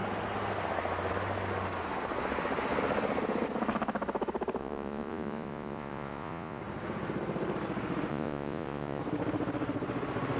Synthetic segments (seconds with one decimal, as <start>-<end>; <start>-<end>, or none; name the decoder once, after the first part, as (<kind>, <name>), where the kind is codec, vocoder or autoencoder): 4.6-6.6 (vocoder, Vocos); 8.1-9.0